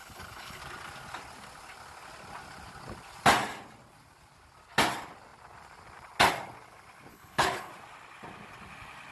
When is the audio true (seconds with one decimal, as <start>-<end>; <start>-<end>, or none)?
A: 0.6-7.1; 7.7-9.1